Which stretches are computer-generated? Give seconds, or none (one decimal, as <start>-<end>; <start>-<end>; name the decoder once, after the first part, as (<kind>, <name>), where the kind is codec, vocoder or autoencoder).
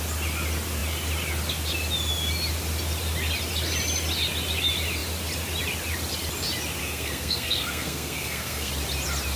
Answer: 6.8-8.7 (codec, SNAC)